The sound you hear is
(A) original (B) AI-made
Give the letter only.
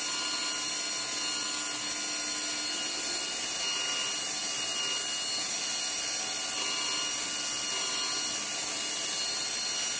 A